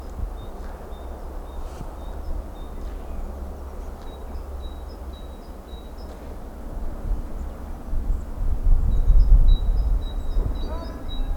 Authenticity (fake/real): real